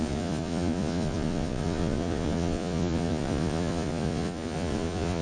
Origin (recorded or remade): remade